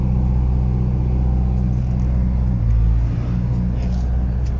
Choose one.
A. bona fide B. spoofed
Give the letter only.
A